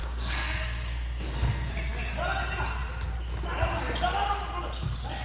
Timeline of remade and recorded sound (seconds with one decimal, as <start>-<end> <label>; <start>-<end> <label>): 0.0-1.7 remade; 1.7-5.2 recorded